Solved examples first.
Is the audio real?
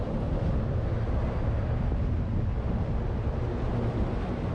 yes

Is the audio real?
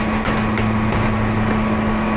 yes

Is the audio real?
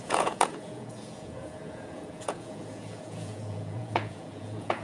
no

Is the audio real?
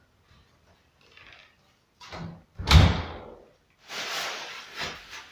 yes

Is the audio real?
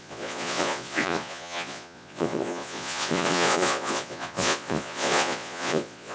no